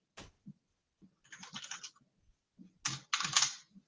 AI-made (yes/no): no